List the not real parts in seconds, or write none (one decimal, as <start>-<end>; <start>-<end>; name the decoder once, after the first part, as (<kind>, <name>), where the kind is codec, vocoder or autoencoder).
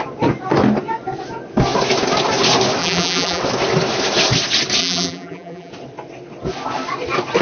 2.8-3.4 (vocoder, BigVGAN v2); 4.8-5.7